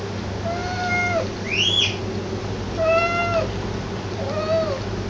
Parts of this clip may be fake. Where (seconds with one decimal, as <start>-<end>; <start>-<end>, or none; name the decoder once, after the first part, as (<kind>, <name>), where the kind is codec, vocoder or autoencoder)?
none